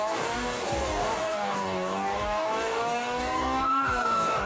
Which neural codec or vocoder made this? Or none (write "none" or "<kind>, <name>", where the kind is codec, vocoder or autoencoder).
codec, DAC